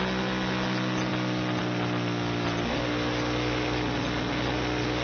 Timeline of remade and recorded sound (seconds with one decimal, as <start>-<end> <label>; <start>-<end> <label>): 0.0-5.0 recorded